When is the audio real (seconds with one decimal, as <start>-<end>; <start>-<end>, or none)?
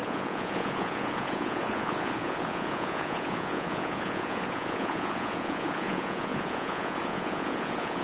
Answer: none